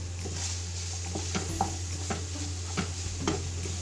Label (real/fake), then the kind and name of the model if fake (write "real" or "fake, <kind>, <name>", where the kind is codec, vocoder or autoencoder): real